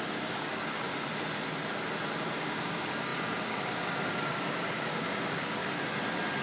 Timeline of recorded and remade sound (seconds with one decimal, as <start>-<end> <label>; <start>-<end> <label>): 0.0-0.9 remade; 0.9-2.2 recorded; 2.2-5.6 remade; 5.6-6.4 recorded